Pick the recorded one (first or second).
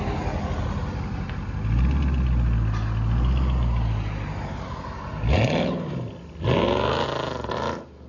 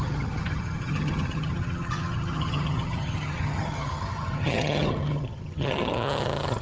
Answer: first